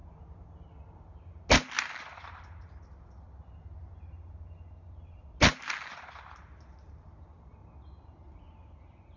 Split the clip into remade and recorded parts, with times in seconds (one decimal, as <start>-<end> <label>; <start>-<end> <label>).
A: 0.0-9.2 recorded